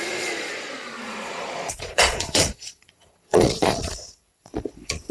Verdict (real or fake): fake